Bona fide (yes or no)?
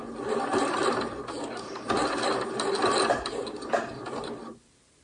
yes